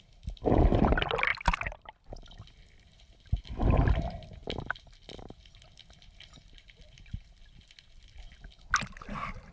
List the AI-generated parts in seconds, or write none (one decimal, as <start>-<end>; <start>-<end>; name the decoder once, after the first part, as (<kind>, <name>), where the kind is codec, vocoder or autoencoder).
none